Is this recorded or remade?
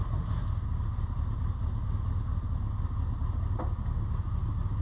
recorded